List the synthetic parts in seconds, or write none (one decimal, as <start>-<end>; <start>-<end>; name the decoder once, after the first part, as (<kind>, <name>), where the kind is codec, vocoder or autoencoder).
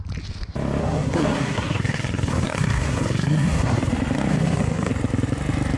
0.8-3.9 (codec, SNAC); 4.3-4.9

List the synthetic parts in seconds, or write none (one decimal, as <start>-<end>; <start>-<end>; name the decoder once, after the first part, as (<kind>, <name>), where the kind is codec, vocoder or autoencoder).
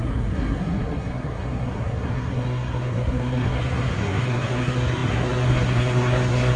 0.0-6.6 (codec, SNAC)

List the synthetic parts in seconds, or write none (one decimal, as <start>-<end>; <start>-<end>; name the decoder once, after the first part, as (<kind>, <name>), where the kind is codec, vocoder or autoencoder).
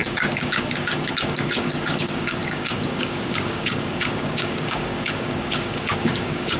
0.0-6.6 (codec, DAC)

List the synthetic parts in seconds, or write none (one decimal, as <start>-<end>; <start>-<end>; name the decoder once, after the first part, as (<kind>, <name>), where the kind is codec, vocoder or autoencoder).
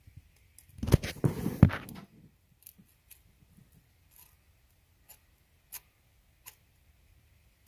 none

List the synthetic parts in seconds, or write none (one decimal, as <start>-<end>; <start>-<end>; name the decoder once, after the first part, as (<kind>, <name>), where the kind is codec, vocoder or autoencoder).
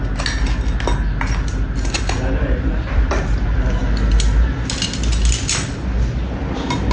none